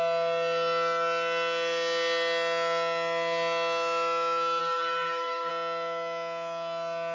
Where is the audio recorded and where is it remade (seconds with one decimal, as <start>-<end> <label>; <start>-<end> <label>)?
0.0-4.6 recorded; 4.6-5.5 remade; 5.5-7.1 recorded